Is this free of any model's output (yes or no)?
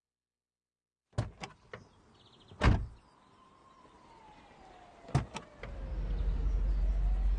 yes